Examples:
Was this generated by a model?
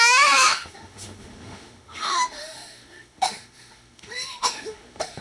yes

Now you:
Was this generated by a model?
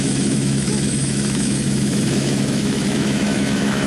yes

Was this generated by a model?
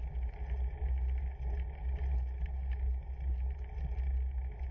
no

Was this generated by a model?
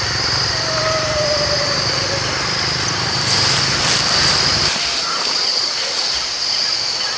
no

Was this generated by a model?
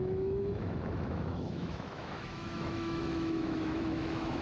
yes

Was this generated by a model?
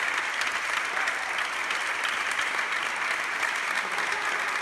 no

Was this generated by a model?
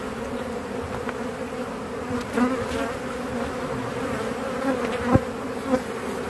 no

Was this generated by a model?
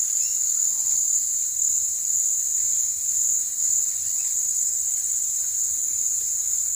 no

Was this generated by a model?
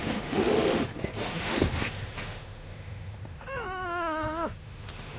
yes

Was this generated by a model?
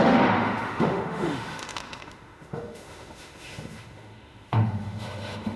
yes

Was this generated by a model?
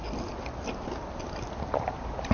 no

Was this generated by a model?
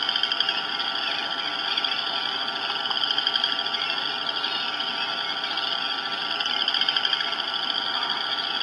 no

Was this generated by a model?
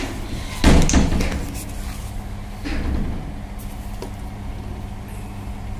no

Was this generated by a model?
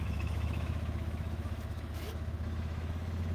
yes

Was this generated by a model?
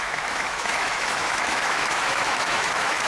yes